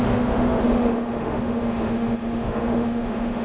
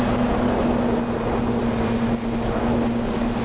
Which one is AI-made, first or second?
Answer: first